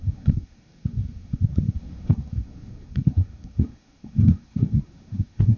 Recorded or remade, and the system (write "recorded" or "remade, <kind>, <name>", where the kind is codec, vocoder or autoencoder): remade, codec, SNAC